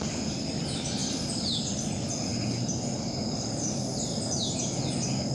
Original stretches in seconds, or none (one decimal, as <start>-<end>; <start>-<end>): 0.0-1.0; 1.9-5.3